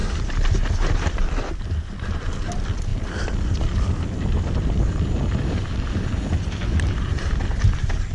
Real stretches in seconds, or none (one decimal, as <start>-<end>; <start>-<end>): 2.4-2.9

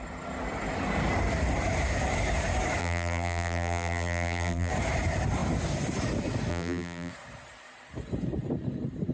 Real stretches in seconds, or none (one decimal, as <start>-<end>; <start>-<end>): 0.0-2.8; 4.7-6.5; 7.1-9.1

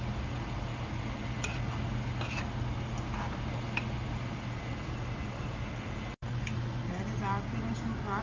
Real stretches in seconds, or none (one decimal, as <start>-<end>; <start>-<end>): 0.0-8.2

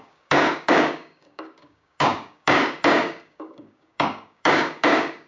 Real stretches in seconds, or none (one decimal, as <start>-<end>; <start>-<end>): none

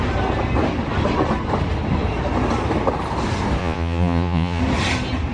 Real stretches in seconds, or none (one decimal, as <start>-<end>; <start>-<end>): 0.0-3.6; 4.6-5.3

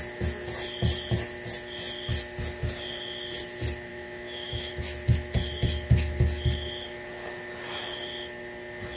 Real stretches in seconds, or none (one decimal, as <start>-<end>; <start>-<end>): 0.0-3.9; 4.7-9.0

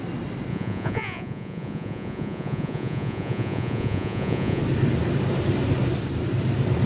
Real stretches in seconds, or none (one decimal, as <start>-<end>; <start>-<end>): 0.0-0.5; 4.6-6.9

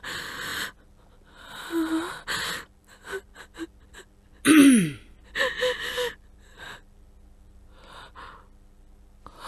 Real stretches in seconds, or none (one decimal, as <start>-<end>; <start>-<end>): 0.0-9.5